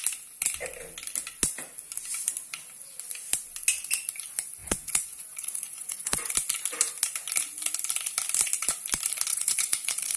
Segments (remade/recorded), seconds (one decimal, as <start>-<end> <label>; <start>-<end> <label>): 0.0-4.6 recorded; 4.6-6.3 remade; 6.3-9.3 recorded; 9.3-10.2 remade